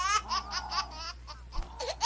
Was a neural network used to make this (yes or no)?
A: no